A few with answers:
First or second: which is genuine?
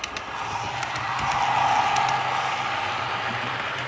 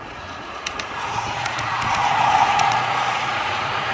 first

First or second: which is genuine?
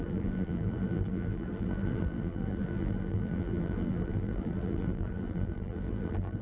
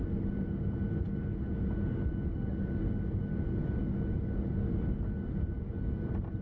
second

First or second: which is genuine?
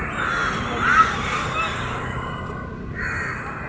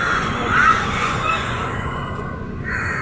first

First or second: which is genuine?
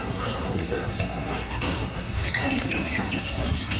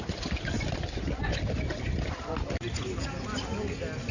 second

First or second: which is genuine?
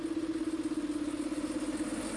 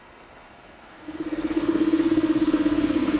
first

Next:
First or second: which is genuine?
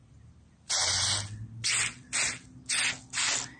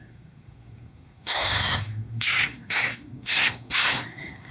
first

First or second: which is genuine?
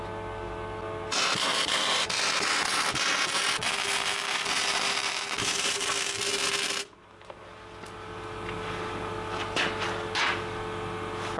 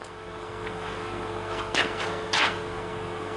first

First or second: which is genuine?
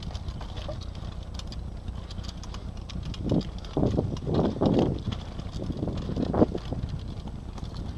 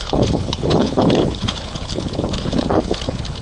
first